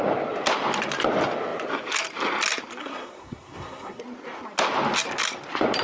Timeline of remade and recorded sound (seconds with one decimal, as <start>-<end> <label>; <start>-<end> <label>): 0.0-2.8 recorded; 2.8-4.0 remade; 4.0-5.8 recorded